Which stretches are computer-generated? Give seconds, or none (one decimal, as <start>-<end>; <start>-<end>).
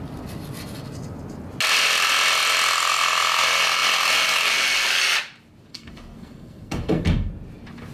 5.7-7.3